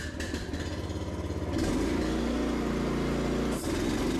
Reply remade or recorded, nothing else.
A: recorded